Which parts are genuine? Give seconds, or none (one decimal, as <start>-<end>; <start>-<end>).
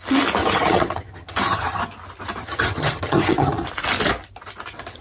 0.0-0.4; 1.8-2.4; 3.5-5.0